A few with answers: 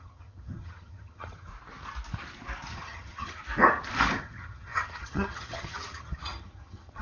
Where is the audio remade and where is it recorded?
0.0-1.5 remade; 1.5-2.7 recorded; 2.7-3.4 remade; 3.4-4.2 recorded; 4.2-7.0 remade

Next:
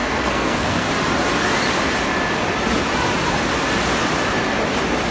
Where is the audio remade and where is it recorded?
0.0-0.9 remade; 0.9-5.1 recorded

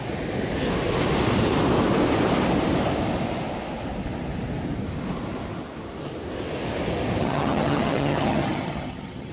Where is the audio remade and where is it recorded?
0.0-7.2 recorded; 7.2-9.3 remade

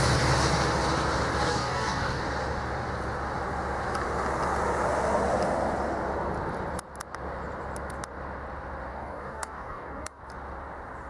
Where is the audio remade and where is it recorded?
0.0-1.5 recorded; 1.5-2.2 remade; 2.2-8.9 recorded; 8.9-10.2 remade; 10.2-11.1 recorded